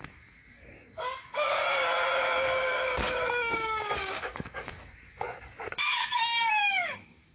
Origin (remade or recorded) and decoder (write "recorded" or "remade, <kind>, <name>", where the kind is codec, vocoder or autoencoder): remade, codec, DAC